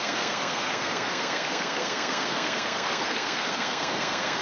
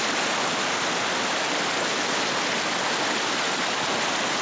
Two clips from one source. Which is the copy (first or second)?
first